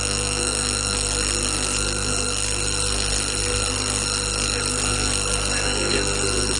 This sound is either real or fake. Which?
fake